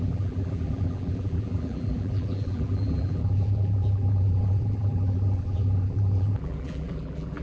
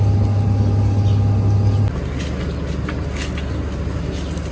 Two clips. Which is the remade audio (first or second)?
first